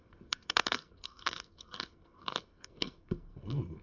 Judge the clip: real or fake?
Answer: fake